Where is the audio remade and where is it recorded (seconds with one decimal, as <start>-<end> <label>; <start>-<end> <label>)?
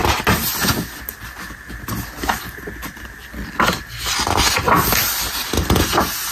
0.0-6.3 recorded